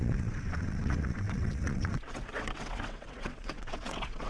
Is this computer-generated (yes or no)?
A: yes